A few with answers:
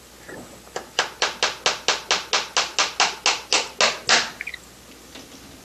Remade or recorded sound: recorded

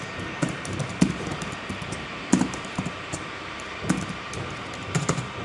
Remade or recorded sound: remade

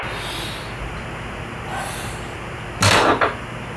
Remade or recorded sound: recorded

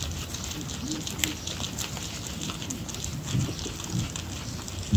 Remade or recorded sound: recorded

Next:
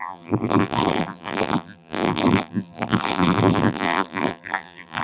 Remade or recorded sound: remade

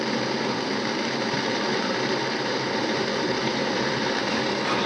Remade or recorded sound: remade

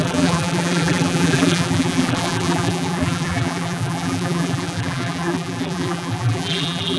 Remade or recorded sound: remade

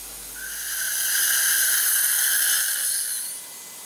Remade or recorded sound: recorded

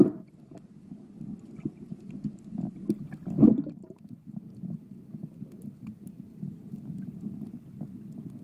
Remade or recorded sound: recorded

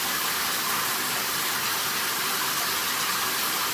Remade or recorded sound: recorded